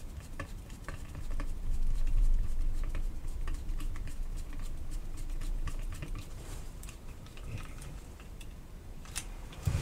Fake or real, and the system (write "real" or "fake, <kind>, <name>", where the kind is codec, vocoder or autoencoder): fake, vocoder, BigVGAN v2